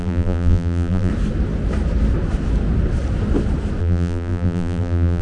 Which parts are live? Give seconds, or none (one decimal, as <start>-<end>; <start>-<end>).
1.1-3.8